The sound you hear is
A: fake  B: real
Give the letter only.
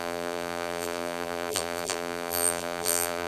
A